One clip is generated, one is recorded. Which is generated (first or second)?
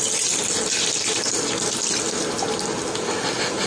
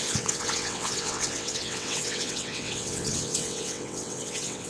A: second